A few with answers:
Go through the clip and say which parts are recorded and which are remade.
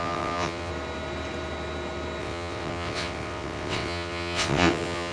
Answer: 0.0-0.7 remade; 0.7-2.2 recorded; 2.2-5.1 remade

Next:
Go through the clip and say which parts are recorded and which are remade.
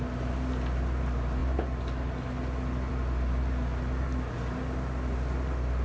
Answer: 0.0-5.8 recorded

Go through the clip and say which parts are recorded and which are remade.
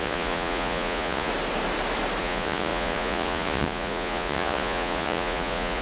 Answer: 0.0-1.3 remade; 1.3-2.2 recorded; 2.2-5.8 remade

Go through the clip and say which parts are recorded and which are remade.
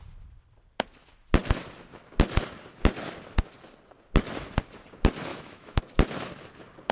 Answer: 0.0-5.3 recorded; 5.3-5.8 remade; 5.8-6.9 recorded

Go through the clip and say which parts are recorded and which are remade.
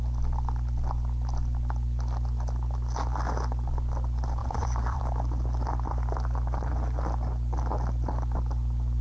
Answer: 0.0-4.4 recorded; 4.4-5.0 remade; 5.0-9.0 recorded